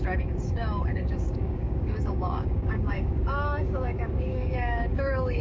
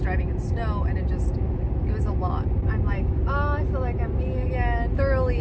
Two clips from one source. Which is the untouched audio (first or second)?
second